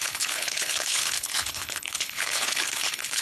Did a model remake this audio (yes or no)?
yes